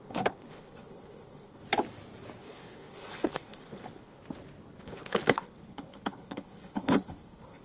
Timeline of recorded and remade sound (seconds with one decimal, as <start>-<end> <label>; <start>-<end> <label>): 0.0-1.6 remade; 1.6-2.4 recorded; 2.4-4.2 remade; 4.2-4.8 recorded; 4.8-7.6 remade